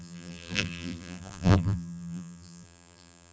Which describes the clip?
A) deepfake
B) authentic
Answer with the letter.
A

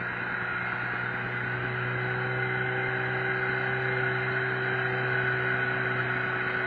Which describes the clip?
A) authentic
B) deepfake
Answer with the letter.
A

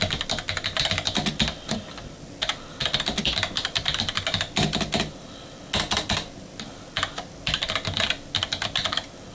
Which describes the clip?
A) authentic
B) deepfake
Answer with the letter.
A